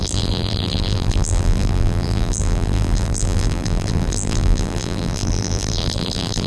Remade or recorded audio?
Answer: remade